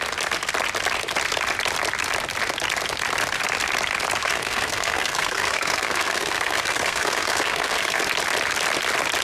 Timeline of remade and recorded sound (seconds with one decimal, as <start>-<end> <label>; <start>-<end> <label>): 0.0-4.2 recorded; 4.2-8.0 remade; 8.0-9.2 recorded